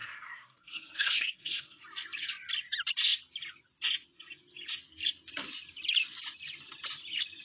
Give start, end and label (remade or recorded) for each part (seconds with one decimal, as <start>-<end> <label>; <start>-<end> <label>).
0.0-1.8 remade; 1.8-7.4 recorded

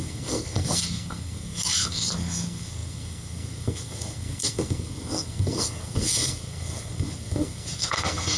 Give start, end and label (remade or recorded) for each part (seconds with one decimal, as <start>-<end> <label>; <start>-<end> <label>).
0.0-8.4 remade

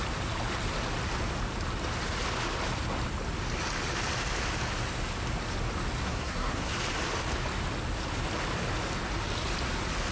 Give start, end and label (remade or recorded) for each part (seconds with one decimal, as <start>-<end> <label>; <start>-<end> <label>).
0.0-6.0 recorded; 6.0-6.7 remade; 6.7-10.1 recorded